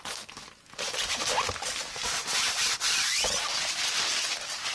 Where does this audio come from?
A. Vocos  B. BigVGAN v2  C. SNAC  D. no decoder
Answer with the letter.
D